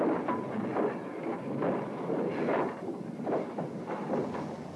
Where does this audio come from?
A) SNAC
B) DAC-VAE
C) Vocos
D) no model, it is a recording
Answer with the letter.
D